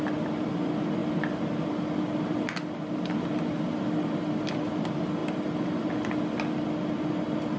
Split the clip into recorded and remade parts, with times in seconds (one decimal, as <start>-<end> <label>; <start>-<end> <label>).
0.0-7.6 recorded